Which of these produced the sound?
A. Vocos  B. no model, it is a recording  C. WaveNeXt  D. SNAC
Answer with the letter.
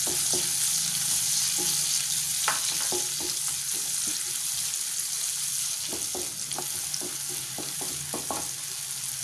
B